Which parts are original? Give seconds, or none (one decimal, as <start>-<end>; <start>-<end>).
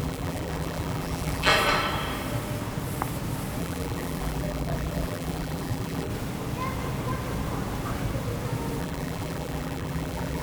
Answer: 1.5-3.6; 6.1-8.8